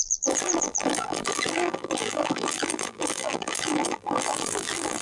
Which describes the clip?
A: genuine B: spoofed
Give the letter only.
B